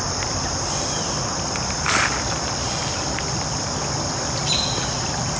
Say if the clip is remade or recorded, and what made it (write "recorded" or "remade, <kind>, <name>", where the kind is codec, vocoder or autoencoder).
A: remade, vocoder, BigVGAN v2